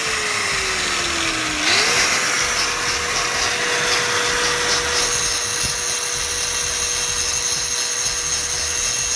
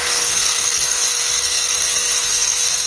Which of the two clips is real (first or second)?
first